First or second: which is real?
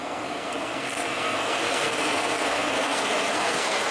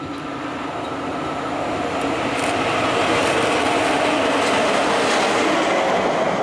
second